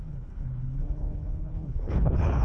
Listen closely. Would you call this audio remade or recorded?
remade